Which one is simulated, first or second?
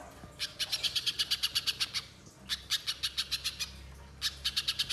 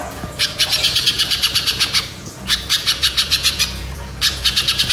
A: second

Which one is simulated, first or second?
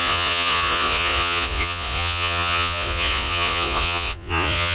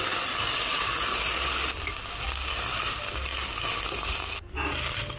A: first